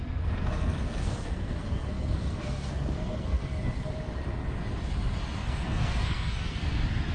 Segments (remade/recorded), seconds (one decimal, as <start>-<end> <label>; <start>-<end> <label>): 0.0-3.5 remade; 3.5-5.4 recorded; 5.4-7.1 remade